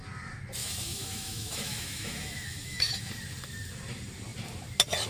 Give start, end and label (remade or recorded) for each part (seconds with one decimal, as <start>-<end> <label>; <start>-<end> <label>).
0.0-0.6 recorded; 0.6-3.1 remade; 3.1-5.1 recorded